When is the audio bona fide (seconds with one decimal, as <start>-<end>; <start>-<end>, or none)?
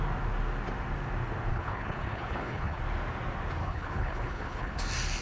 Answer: 0.0-1.5; 2.8-3.6; 4.8-5.2